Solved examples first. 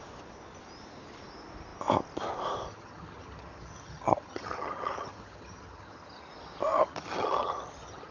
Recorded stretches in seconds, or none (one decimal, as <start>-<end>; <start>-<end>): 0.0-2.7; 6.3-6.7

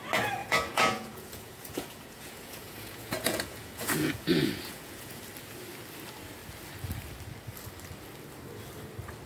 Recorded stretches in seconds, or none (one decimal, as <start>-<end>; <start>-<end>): 0.0-0.4; 5.2-9.3

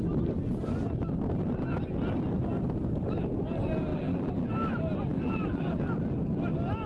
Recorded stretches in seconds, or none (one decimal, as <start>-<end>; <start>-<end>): 0.0-3.9; 4.5-5.1; 5.8-6.9

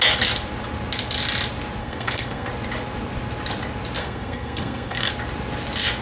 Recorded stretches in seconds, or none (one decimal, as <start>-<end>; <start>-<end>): 0.0-1.8; 2.5-4.0; 5.1-6.0

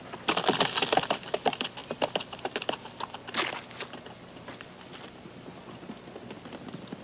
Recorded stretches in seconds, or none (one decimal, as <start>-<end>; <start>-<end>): 0.0-7.0

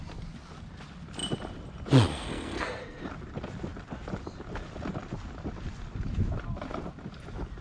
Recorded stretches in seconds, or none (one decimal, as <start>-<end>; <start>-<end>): 0.0-2.1; 3.0-7.6

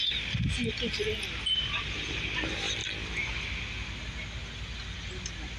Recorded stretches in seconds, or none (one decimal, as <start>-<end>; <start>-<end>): 0.0-5.6

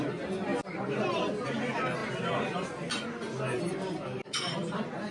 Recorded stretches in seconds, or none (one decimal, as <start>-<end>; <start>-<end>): 0.0-5.1